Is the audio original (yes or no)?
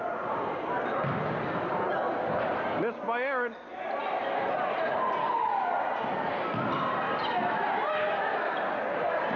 yes